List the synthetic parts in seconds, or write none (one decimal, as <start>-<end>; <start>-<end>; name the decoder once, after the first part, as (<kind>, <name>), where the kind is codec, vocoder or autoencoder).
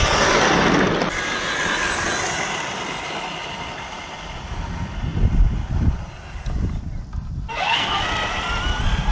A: 7.5-8.0 (codec, SNAC)